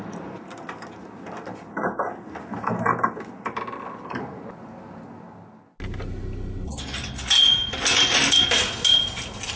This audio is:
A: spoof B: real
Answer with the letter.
B